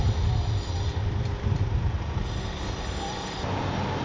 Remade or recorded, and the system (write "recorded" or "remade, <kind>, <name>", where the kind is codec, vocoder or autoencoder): recorded